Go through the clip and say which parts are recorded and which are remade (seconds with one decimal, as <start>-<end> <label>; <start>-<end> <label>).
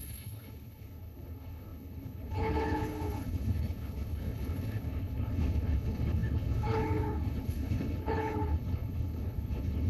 0.0-9.9 remade